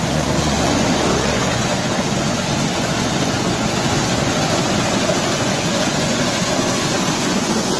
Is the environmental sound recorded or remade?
remade